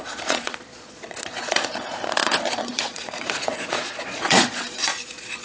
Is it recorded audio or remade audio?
remade